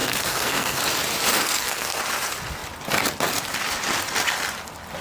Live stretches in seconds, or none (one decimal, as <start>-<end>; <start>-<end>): 0.8-1.3; 2.0-5.0